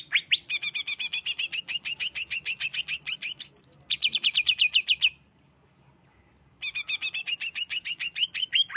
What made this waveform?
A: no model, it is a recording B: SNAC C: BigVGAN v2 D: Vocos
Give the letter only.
A